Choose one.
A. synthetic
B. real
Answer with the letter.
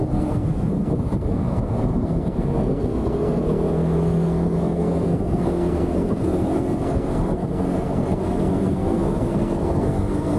A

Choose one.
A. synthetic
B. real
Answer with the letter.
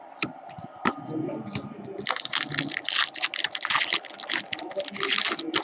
B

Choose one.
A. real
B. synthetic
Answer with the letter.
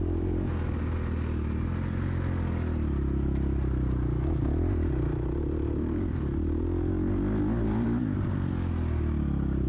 A